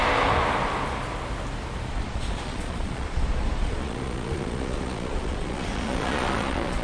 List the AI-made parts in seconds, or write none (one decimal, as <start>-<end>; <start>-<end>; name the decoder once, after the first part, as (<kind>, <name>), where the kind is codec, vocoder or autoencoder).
1.9-6.8 (vocoder, Vocos)